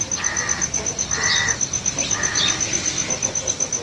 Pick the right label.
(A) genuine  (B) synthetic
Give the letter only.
A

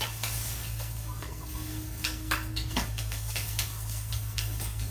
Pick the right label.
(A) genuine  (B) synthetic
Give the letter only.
B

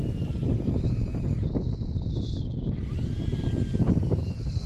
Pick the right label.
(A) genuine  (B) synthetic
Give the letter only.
A